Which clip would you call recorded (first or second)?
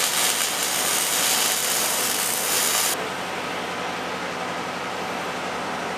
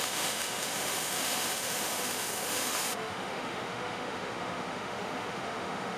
first